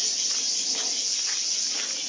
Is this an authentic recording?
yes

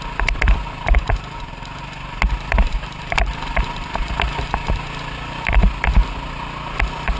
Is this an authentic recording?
yes